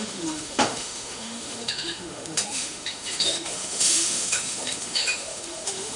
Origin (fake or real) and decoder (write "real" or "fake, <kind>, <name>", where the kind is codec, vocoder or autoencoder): fake, autoencoder, DAC-VAE